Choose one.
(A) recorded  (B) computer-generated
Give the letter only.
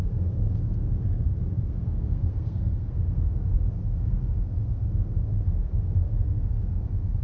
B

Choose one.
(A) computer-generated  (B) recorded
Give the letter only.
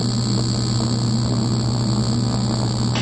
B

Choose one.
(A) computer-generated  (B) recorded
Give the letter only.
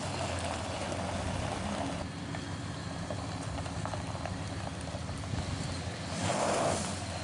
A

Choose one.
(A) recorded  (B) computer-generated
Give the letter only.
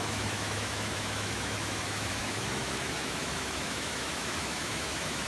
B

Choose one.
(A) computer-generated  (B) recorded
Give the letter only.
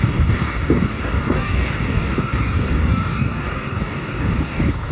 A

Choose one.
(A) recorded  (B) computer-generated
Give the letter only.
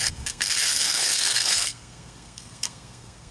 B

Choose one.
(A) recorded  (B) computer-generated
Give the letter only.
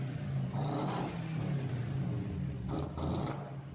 A